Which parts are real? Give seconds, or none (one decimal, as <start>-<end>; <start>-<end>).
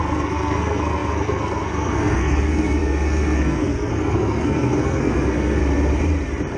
5.6-6.6